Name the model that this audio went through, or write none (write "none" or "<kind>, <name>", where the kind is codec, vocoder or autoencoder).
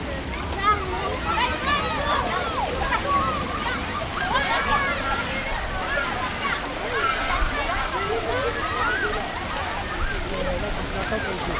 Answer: none